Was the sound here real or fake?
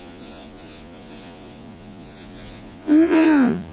fake